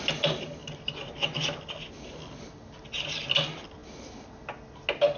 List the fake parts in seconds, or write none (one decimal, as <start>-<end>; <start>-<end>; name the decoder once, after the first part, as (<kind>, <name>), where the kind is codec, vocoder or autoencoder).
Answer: none

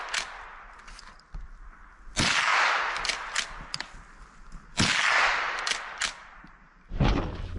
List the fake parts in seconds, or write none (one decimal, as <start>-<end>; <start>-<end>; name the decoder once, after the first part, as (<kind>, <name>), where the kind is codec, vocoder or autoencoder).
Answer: 0.0-2.5 (vocoder, BigVGAN v2); 6.4-7.6

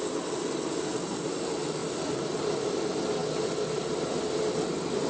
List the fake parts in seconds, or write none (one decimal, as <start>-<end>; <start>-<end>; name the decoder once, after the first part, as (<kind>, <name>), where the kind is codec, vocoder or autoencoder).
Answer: 1.8-2.5 (vocoder, BigVGAN v2)

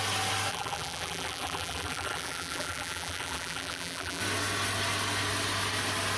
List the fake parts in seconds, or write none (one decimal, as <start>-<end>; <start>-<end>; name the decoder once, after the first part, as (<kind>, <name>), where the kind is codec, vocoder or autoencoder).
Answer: 0.5-4.2 (vocoder, BigVGAN v2)